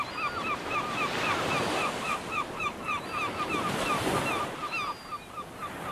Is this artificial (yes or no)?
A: no